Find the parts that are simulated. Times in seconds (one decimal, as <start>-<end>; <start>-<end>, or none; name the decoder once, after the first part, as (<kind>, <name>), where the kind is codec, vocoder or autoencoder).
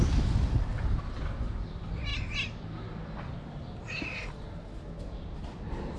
none